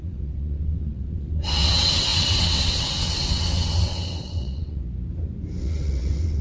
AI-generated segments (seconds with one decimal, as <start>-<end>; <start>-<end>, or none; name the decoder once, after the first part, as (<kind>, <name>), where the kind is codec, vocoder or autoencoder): 0.0-4.8 (vocoder, WaveNeXt); 5.6-6.4